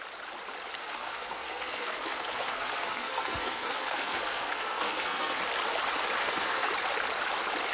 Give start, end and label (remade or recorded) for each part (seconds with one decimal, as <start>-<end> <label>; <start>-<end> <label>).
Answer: 0.0-0.8 recorded; 0.8-5.4 remade; 5.4-6.2 recorded; 6.2-6.7 remade; 6.7-7.7 recorded